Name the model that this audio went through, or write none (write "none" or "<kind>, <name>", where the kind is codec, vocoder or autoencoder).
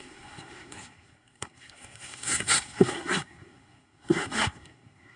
codec, SNAC